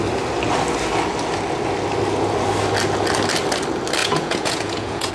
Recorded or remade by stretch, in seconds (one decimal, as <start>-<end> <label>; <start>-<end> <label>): 0.0-4.0 recorded; 4.0-5.1 remade